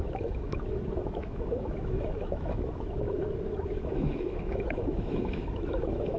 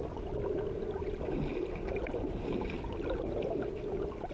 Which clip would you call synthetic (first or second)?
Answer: first